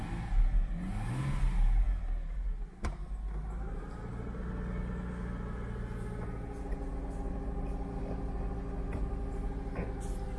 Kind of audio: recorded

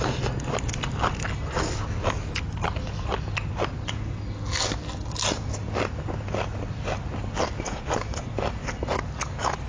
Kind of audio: recorded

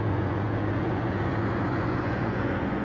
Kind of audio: remade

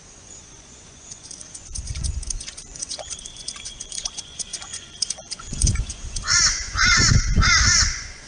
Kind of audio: remade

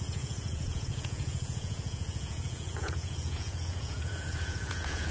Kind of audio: remade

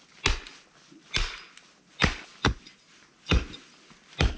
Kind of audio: recorded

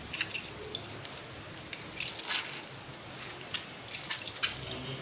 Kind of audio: recorded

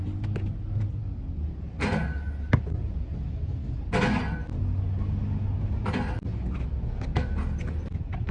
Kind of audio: recorded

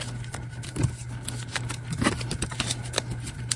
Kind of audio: recorded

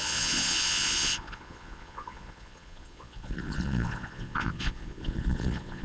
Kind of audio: remade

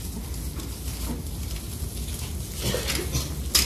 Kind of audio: recorded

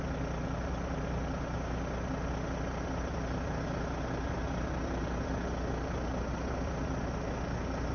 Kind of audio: recorded